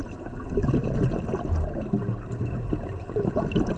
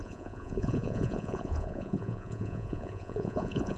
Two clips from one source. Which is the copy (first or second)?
second